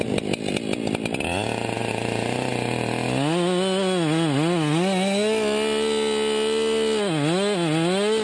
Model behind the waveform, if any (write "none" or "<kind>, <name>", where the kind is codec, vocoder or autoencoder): none